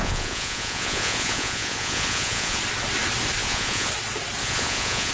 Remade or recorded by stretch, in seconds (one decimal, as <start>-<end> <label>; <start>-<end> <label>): 0.0-2.6 remade; 2.6-3.4 recorded; 3.4-3.9 remade; 3.9-4.4 recorded; 4.4-5.1 remade